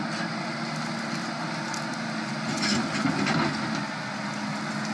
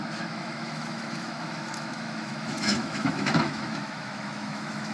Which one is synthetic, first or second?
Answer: second